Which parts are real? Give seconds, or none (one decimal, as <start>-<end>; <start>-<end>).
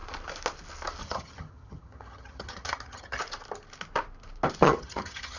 0.0-1.0; 3.2-4.6